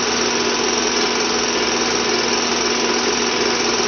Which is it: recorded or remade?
recorded